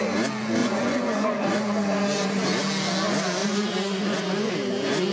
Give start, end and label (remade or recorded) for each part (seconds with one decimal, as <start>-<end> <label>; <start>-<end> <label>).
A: 0.0-0.6 recorded; 0.6-1.5 remade; 1.5-3.4 recorded; 3.4-4.5 remade; 4.5-5.1 recorded